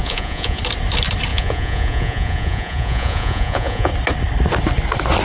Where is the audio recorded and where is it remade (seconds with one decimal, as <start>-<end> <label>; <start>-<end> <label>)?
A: 0.0-0.6 remade; 0.6-1.3 recorded; 1.3-3.9 remade; 3.9-5.2 recorded